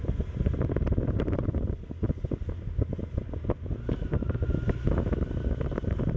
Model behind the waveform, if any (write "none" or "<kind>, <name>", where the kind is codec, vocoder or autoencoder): none